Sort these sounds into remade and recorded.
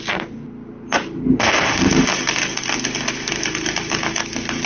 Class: recorded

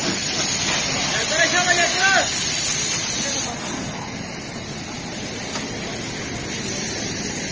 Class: recorded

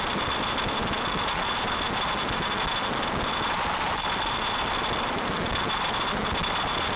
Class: recorded